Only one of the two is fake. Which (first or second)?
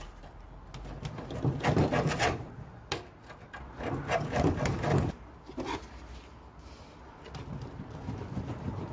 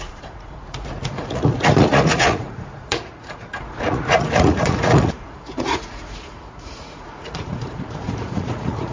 second